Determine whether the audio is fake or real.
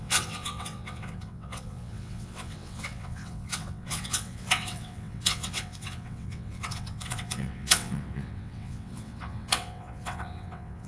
fake